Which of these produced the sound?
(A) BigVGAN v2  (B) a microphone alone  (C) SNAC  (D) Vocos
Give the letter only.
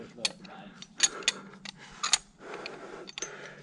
B